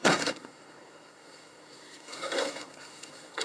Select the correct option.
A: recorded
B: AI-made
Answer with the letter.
B